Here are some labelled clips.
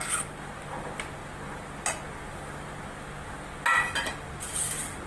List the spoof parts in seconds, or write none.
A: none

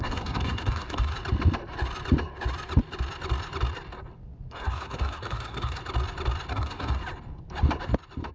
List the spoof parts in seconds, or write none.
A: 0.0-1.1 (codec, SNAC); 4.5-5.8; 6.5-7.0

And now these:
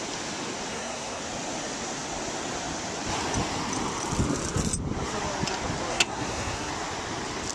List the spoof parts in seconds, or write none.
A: 0.7-1.2 (codec, SNAC); 5.9-6.7